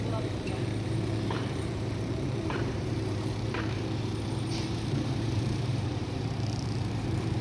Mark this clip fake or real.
fake